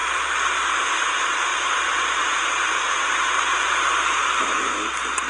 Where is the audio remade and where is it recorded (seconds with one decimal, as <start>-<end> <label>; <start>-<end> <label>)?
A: 0.0-0.9 remade; 0.9-1.5 recorded; 1.5-4.7 remade; 4.7-5.3 recorded